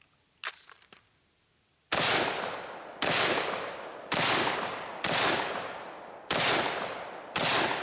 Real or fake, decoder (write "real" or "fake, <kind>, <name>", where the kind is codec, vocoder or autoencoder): real